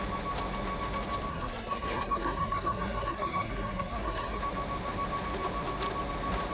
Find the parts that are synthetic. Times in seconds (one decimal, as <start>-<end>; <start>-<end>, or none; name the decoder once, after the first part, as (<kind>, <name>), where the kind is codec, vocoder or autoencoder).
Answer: 1.3-4.4 (codec, SNAC)